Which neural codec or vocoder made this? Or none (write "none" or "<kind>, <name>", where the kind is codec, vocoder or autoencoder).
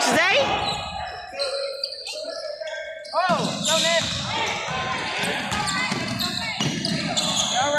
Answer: none